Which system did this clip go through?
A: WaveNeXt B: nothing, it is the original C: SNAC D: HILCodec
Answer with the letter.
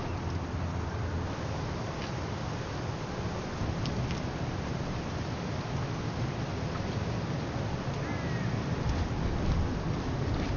B